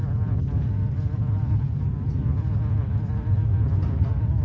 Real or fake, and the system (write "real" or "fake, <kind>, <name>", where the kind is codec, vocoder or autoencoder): real